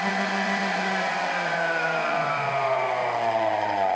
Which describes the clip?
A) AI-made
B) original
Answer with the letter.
A